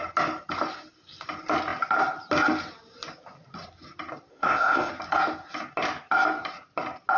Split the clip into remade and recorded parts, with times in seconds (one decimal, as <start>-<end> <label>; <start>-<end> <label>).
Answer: 0.0-4.3 recorded; 4.3-4.9 remade; 4.9-7.2 recorded

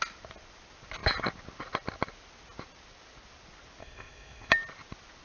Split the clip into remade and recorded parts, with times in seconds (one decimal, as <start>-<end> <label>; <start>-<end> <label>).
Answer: 0.0-3.8 recorded; 3.8-4.5 remade; 4.5-5.2 recorded

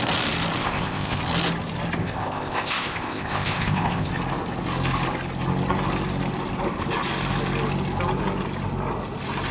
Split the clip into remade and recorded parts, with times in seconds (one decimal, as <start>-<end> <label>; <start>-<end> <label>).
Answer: 0.0-0.6 recorded; 0.6-1.2 remade; 1.2-2.0 recorded; 2.0-4.1 remade; 4.1-9.5 recorded

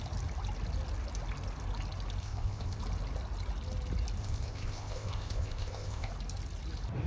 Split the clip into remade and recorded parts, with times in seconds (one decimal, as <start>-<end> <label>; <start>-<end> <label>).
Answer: 0.0-2.2 recorded; 2.2-2.8 remade; 2.8-4.2 recorded; 4.2-6.1 remade; 6.1-7.1 recorded

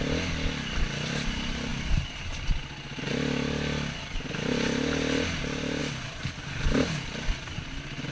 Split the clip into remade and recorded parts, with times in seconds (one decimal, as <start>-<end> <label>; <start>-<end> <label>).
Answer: 0.0-8.1 recorded

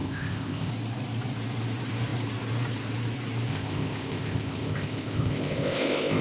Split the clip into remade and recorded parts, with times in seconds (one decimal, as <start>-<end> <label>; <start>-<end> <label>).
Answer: 0.0-0.7 remade; 0.7-3.5 recorded; 3.5-6.2 remade

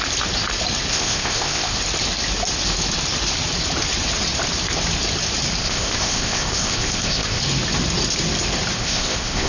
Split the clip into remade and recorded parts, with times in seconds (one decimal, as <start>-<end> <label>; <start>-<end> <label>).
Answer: 0.0-0.9 recorded; 0.9-1.8 remade; 1.8-5.6 recorded; 5.6-7.4 remade; 7.4-8.8 recorded; 8.8-9.5 remade